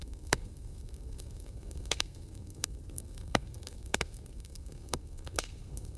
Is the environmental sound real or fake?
fake